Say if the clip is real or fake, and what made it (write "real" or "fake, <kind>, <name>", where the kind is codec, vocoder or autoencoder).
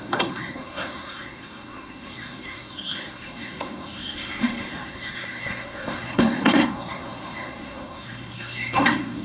fake, codec, SNAC